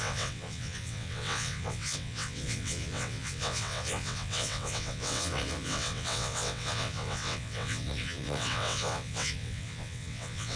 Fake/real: fake